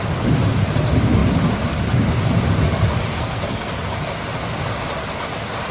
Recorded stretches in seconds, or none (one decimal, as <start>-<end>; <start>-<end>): 0.0-3.1; 3.7-5.7